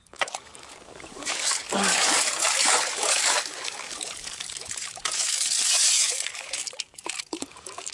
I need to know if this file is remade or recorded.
remade